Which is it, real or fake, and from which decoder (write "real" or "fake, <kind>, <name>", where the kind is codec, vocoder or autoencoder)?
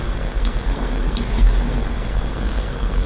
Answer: fake, codec, SNAC